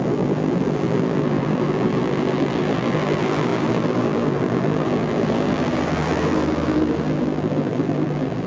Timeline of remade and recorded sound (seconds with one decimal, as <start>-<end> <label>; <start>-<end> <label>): 0.0-8.5 remade